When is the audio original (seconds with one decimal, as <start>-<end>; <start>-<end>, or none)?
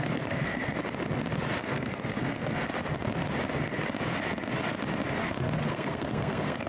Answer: 0.8-1.6; 2.7-5.7